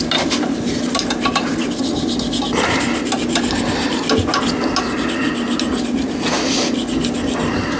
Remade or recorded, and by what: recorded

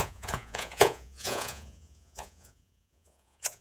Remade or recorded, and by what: remade, vocoder, Vocos